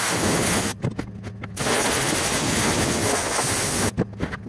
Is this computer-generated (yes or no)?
no